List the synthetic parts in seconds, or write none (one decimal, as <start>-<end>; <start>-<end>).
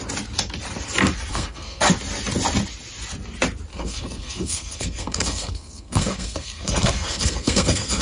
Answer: 1.3-1.8; 3.7-8.0